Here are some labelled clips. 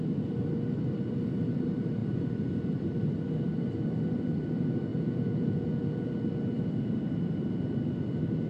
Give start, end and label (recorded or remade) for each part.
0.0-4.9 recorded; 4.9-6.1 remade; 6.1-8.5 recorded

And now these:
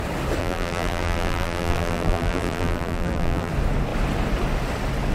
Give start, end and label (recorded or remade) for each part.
0.0-0.4 recorded; 0.4-3.5 remade; 3.5-5.1 recorded

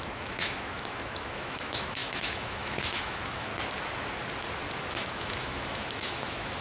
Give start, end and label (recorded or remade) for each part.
0.0-3.5 remade; 3.5-4.9 recorded; 4.9-6.6 remade

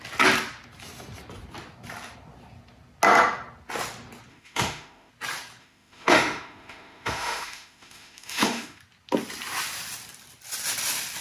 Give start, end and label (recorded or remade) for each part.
0.0-4.3 recorded; 4.3-5.1 remade; 5.1-5.6 recorded; 5.6-8.8 remade; 8.8-11.2 recorded